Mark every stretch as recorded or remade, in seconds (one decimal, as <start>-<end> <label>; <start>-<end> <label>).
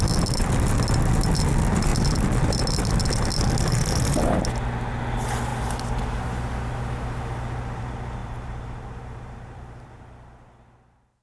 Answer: 0.0-8.2 recorded; 8.2-9.9 remade; 9.9-11.2 recorded